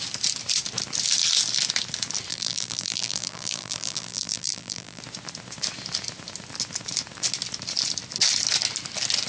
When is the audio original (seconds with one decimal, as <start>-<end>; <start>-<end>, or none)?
0.0-2.3; 5.0-9.3